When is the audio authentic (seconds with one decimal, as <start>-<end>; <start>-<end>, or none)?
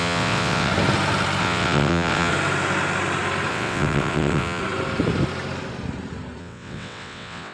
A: 0.7-1.4; 2.3-3.5; 4.6-6.4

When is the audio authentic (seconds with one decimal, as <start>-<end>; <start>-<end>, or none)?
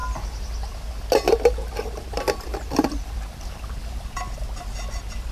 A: 0.0-2.5; 4.1-5.3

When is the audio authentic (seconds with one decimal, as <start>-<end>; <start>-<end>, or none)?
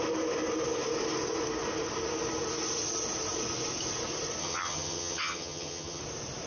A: 0.0-4.4; 6.0-6.5